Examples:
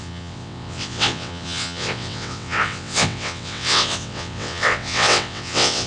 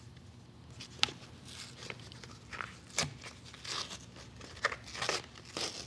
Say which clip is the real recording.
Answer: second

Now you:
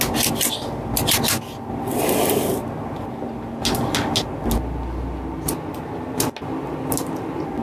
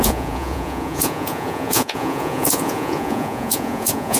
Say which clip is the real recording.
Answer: first